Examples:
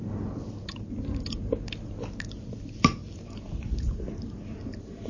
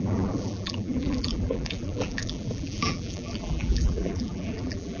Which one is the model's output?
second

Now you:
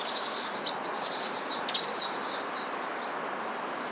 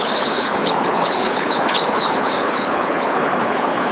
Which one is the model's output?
second